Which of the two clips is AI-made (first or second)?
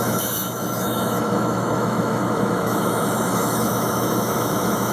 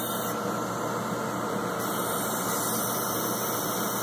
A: first